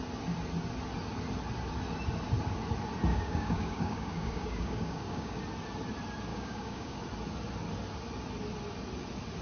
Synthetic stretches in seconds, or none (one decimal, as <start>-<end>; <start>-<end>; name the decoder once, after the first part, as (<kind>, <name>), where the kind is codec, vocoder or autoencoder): 3.1-5.4 (codec, DAC); 6.3-7.0